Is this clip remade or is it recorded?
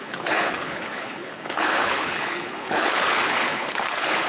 remade